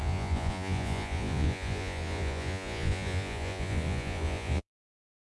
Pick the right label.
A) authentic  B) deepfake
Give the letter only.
B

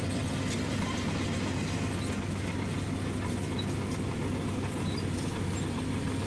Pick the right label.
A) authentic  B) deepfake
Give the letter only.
A